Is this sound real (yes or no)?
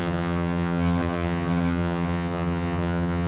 no